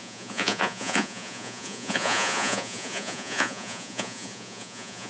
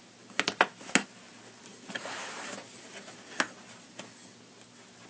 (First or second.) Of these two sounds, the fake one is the first